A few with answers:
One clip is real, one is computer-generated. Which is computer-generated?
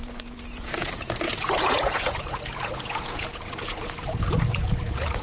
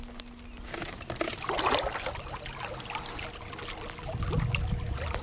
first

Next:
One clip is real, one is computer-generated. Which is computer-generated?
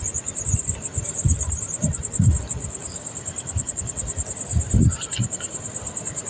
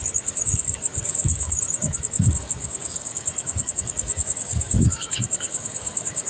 second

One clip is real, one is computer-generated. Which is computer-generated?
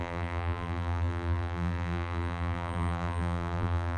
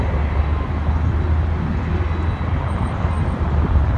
first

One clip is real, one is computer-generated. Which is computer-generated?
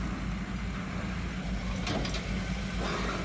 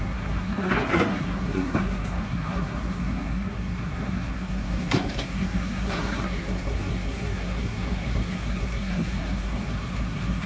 second